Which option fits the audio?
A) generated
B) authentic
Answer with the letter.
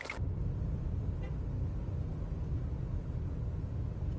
B